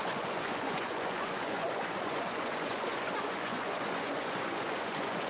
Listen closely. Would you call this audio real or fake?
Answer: fake